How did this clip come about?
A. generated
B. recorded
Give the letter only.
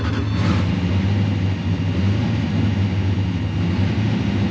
B